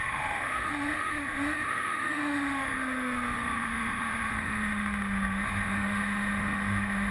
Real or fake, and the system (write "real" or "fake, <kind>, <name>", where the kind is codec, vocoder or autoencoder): fake, autoencoder, DAC-VAE